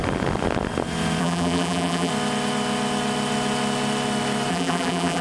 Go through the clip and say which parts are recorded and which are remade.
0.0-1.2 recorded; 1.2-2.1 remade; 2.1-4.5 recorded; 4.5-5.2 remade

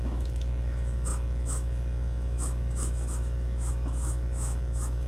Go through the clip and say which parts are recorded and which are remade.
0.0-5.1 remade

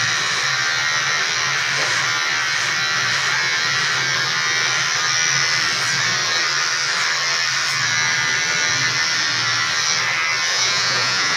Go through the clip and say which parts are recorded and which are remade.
0.0-10.5 recorded; 10.5-11.4 remade